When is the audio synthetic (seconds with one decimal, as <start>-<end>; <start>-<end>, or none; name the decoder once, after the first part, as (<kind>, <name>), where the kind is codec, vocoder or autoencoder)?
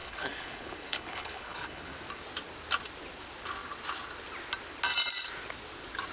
0.0-1.9 (codec, HILCodec)